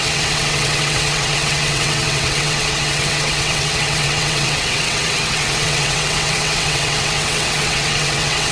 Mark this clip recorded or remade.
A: remade